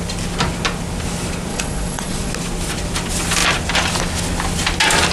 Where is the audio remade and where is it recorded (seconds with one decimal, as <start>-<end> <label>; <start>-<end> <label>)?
0.0-1.5 recorded; 1.5-2.3 remade; 2.3-5.1 recorded